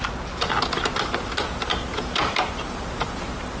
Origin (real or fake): real